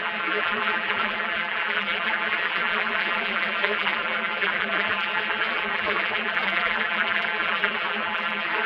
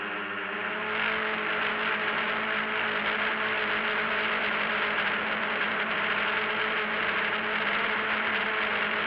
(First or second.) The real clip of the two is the second